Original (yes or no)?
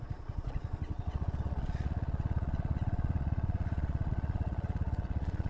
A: no